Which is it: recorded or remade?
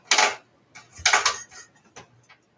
recorded